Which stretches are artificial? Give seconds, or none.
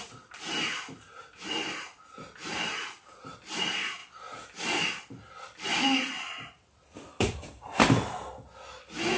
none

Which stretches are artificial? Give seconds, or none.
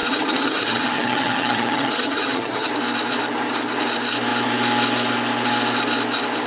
0.0-2.7 (vocoder, HiFi-GAN)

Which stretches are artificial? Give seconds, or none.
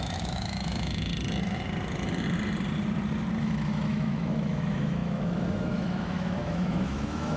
0.0-1.1 (autoencoder, DAC-VAE); 3.4-7.4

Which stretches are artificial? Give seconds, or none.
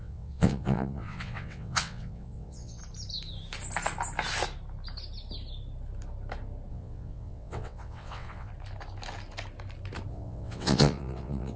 0.0-2.8 (vocoder, WaveNeXt); 6.7-8.5; 10.1-11.6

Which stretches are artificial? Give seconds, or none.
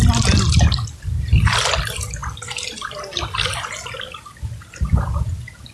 none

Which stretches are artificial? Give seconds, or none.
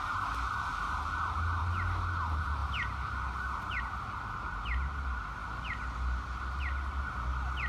none